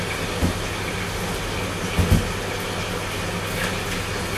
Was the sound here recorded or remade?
recorded